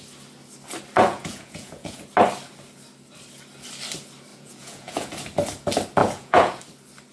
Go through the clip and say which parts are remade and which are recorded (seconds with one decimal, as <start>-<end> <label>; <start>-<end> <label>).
0.0-1.0 recorded; 1.0-2.0 remade; 2.0-4.3 recorded; 4.3-5.1 remade; 5.1-6.0 recorded; 6.0-6.6 remade; 6.6-7.1 recorded